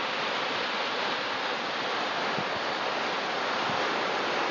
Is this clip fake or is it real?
real